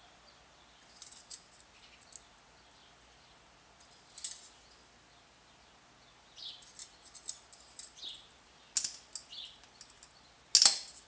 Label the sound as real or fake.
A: real